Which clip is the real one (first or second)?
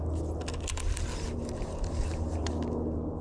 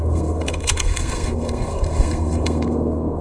first